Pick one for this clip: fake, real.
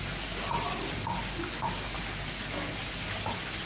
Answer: real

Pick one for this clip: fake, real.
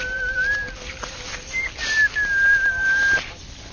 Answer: real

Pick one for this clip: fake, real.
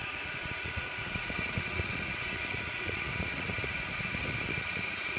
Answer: fake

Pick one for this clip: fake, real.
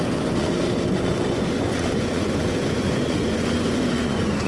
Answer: fake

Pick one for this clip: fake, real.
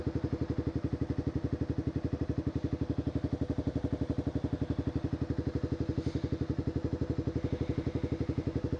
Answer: real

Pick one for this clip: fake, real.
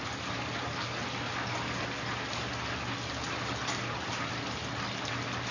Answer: real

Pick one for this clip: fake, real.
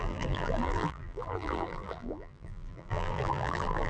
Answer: fake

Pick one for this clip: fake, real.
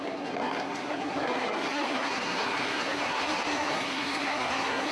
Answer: fake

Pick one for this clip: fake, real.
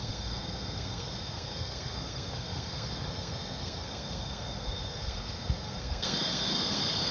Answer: fake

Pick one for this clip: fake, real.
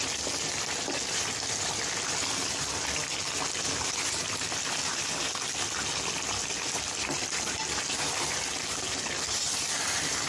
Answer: real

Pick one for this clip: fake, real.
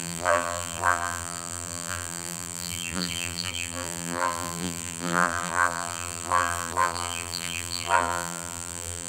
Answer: fake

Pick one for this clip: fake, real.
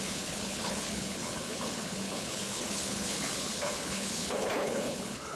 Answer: fake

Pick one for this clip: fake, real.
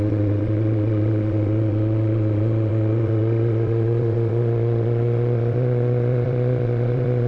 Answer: fake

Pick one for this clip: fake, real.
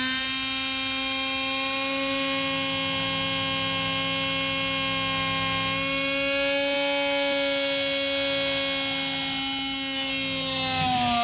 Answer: real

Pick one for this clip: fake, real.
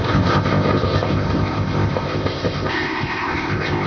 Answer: fake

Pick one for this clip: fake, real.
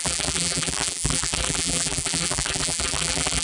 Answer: fake